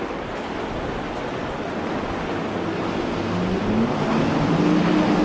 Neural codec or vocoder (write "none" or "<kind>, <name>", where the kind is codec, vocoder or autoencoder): none